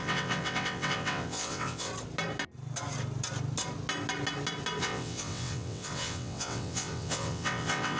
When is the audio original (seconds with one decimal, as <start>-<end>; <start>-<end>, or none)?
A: 1.9-4.8